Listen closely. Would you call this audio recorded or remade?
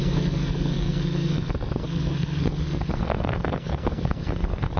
remade